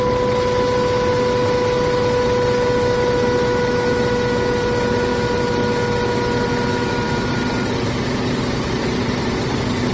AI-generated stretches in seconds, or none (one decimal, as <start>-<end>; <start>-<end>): none